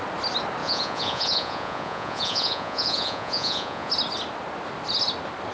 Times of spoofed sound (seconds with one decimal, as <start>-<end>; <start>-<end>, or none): 0.6-3.9